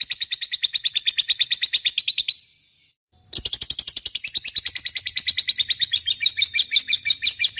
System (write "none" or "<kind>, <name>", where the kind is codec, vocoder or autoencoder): vocoder, BigVGAN v2